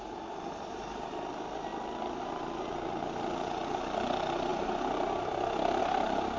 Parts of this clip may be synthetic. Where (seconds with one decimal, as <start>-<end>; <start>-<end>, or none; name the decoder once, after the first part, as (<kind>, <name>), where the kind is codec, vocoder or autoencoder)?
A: none